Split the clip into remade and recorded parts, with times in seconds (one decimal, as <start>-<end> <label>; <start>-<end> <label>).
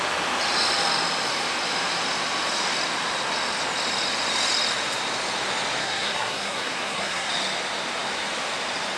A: 0.0-5.8 recorded; 5.8-7.3 remade; 7.3-9.0 recorded